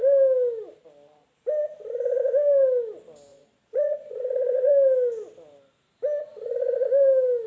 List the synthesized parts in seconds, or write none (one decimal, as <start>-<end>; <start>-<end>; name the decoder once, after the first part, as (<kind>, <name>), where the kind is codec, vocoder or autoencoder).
3.3-4.7 (vocoder, Vocos)